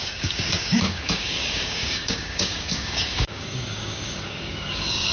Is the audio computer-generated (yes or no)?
yes